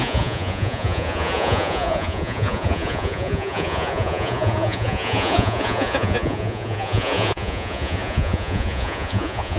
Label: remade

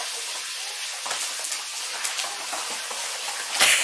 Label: recorded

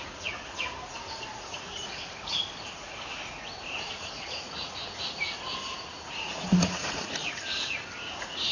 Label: remade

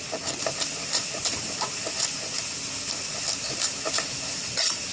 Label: recorded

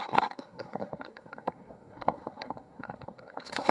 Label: remade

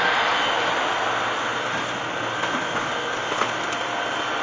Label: recorded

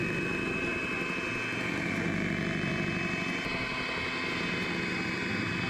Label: recorded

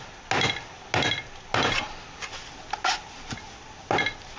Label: recorded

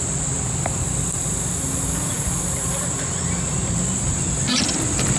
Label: recorded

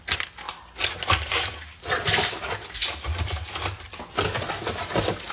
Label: recorded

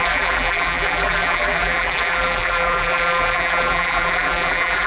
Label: remade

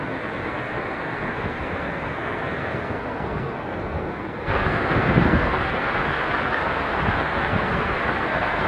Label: remade